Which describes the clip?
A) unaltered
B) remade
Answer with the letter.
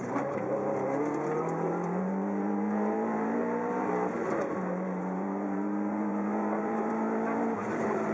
B